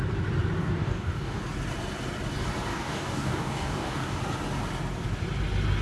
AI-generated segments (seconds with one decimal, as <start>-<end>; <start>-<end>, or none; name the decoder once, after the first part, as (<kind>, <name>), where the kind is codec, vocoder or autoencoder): 0.6-1.4 (codec, DAC); 2.7-4.2